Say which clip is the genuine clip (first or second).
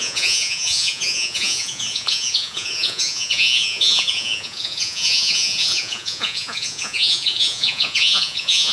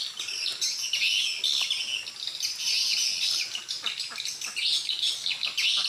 second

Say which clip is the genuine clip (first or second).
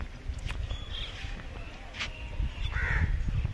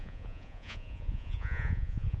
first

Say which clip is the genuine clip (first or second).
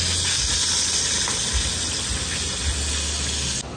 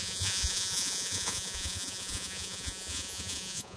first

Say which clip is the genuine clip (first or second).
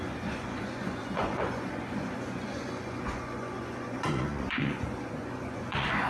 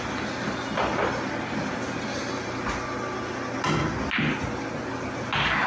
second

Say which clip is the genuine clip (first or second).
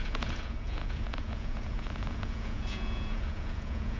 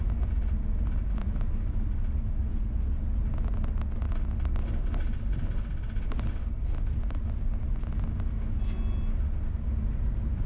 second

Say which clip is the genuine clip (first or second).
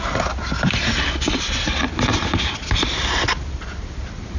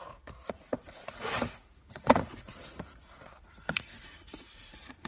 first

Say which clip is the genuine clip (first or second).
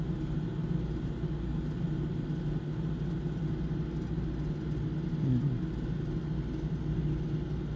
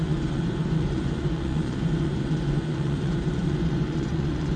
first